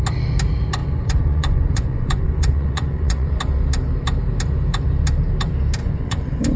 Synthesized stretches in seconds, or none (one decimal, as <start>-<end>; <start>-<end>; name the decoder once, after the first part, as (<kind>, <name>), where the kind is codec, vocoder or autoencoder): 0.8-3.3 (vocoder, Vocos); 5.8-6.6